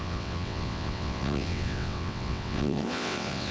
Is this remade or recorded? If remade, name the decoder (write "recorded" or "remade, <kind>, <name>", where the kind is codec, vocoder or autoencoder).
remade, vocoder, WaveNeXt